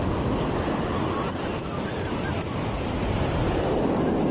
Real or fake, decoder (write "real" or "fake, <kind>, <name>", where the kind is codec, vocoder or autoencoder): real